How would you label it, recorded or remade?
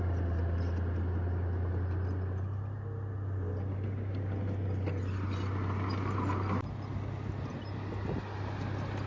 recorded